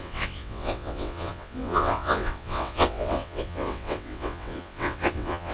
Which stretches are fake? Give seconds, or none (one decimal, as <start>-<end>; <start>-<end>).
0.0-5.5